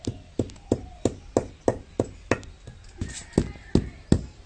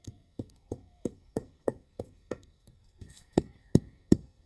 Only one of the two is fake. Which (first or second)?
second